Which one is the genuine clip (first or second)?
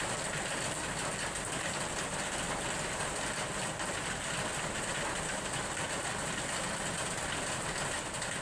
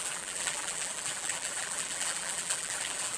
first